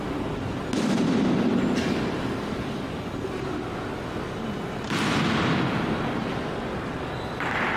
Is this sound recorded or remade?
recorded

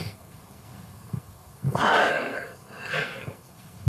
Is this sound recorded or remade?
remade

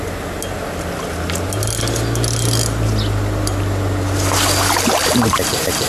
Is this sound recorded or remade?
recorded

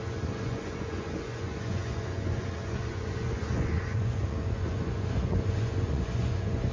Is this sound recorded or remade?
remade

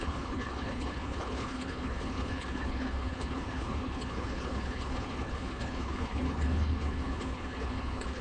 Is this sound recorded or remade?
remade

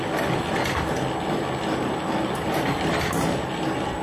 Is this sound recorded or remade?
recorded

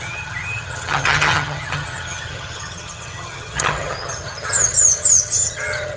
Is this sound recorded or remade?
remade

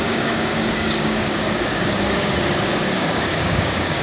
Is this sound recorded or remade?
remade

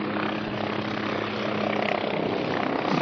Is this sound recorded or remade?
recorded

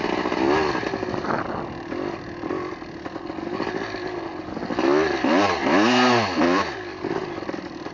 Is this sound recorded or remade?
recorded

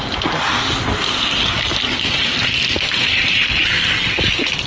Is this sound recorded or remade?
recorded